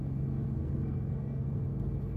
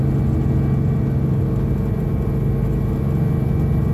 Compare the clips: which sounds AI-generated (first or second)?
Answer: first